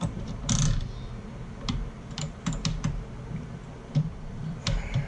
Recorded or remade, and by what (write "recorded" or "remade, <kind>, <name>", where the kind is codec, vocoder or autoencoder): remade, vocoder, BigVGAN v2